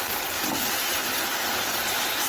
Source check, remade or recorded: remade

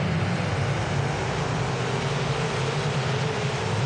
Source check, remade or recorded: recorded